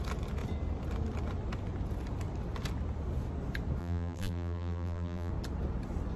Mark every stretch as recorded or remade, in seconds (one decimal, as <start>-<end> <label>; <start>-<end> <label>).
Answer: 0.0-3.8 recorded; 3.8-5.3 remade; 5.3-6.2 recorded